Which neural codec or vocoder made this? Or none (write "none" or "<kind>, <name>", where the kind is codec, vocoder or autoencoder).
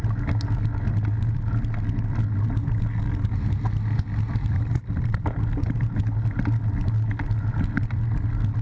none